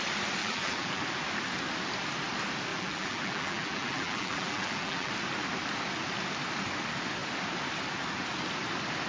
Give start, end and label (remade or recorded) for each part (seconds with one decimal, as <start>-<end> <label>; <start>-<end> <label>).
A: 0.0-0.4 recorded; 0.4-1.0 remade; 1.0-2.7 recorded; 2.7-5.1 remade; 5.1-9.1 recorded